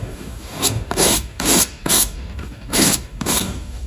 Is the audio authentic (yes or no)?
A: no